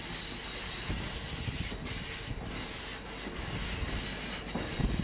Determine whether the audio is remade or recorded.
recorded